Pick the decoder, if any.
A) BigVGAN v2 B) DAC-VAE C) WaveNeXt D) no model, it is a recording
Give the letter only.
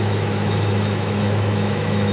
B